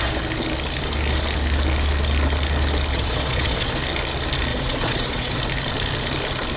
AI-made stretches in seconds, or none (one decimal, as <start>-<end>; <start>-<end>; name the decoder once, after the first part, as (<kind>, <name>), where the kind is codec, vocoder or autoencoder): 2.9-3.8 (vocoder, Vocos); 4.5-5.4